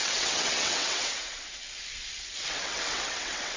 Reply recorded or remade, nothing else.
remade